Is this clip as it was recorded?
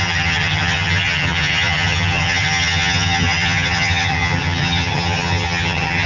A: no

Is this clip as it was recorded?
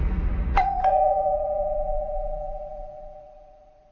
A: no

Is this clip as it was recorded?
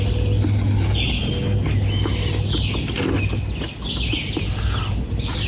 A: yes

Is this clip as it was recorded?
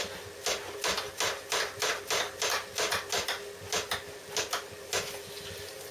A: yes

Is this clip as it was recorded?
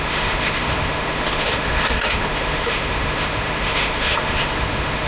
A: no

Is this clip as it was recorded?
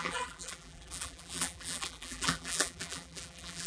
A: no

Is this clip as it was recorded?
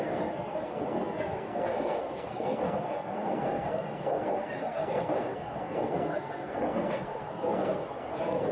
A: no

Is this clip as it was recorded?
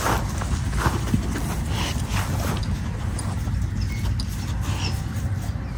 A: yes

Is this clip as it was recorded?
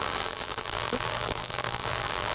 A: no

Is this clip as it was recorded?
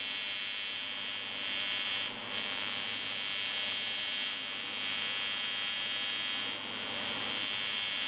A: yes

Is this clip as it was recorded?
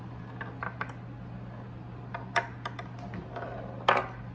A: yes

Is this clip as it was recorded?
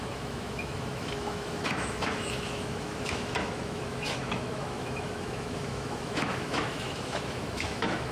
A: no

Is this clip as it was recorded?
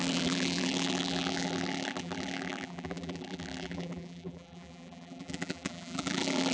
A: no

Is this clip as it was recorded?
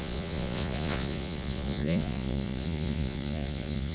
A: no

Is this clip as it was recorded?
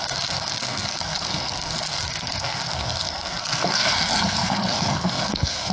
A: no